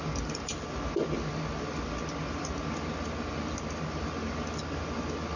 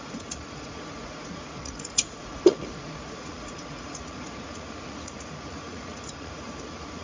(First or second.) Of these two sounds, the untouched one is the first